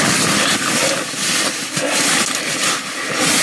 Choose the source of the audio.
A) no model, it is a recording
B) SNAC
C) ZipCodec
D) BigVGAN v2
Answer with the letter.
A